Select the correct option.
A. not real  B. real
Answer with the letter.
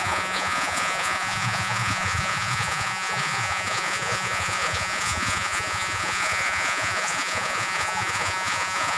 A